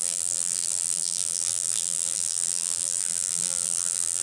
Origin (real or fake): fake